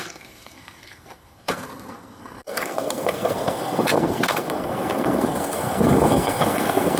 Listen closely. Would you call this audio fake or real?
fake